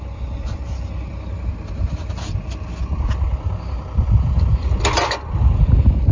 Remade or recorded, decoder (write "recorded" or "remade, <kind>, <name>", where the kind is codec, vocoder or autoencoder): recorded